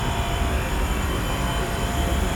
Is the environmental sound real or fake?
fake